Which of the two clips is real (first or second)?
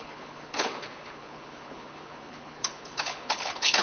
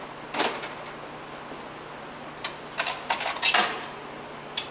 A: second